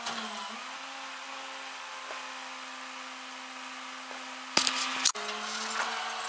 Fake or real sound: real